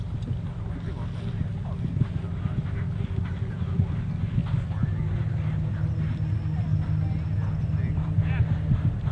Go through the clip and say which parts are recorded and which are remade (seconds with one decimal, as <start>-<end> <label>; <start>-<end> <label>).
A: 0.0-9.1 recorded